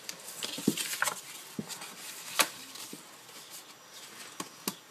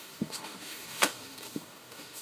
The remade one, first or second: second